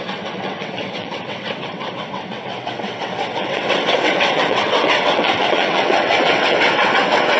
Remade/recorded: remade